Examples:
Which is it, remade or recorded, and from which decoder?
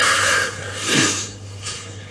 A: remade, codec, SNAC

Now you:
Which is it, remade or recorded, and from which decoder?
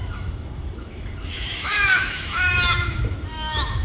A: remade, autoencoder, DAC-VAE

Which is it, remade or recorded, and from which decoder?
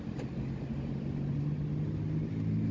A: recorded